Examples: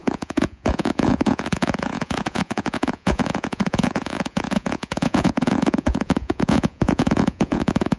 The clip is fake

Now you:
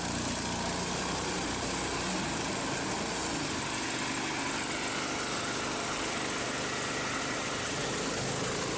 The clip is real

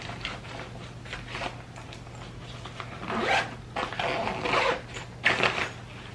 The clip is real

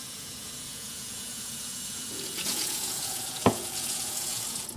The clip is fake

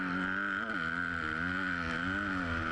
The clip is real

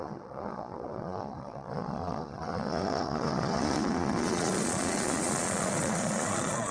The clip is fake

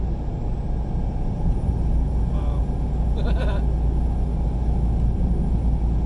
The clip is real